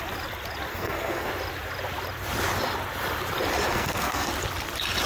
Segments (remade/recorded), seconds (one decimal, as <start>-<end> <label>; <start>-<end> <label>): 0.0-0.7 recorded; 0.7-1.3 remade; 1.3-3.7 recorded; 3.7-4.3 remade; 4.3-5.1 recorded